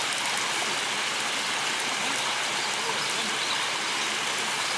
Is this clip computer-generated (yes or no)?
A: no